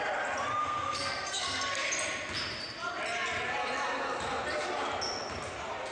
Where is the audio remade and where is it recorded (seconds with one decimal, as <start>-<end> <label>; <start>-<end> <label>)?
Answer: 0.0-0.6 recorded; 0.6-1.9 remade; 1.9-5.9 recorded